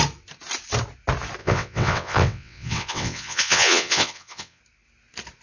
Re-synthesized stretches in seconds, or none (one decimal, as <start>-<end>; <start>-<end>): 1.4-4.6